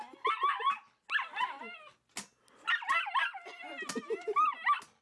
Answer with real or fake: real